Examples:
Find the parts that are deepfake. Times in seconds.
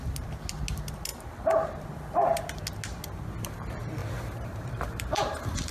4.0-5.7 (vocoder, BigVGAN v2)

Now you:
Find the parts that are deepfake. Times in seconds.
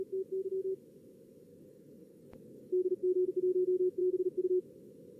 1.5-3.3 (codec, DAC); 4.0-4.6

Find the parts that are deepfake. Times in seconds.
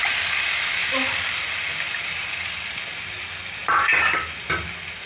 0.8-2.5 (vocoder, BigVGAN v2)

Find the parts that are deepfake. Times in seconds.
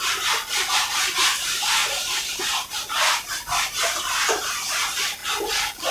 0.0-5.2 (vocoder, BigVGAN v2)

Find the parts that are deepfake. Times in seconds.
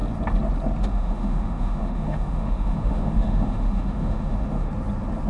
0.8-4.7 (autoencoder, DAC-VAE)